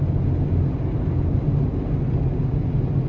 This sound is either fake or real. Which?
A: real